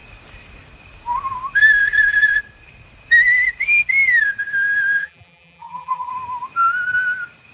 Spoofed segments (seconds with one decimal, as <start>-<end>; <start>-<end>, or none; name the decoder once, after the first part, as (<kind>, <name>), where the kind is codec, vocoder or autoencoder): 5.0-6.1 (vocoder, BigVGAN v2)